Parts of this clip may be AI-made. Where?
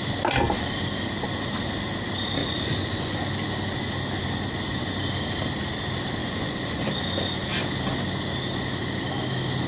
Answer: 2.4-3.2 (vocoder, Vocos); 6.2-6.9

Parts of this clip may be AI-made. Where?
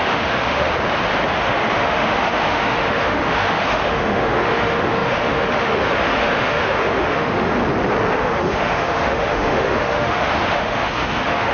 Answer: 0.0-0.7 (autoencoder, DAC-VAE); 1.4-7.6; 8.2-11.5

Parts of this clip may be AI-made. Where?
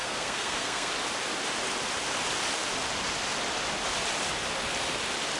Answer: 0.0-0.9 (codec, SNAC)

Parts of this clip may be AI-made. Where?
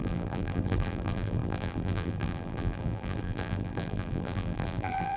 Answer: 0.0-5.2 (vocoder, BigVGAN v2)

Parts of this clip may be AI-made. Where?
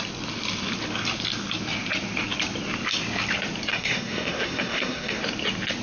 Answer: 3.7-5.2 (codec, SNAC)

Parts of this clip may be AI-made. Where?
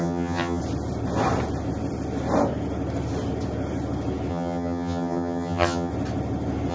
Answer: 0.0-0.6 (vocoder, HiFi-GAN); 4.3-5.9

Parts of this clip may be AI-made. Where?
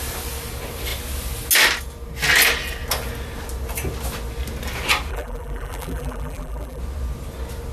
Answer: 5.1-6.8 (vocoder, BigVGAN v2)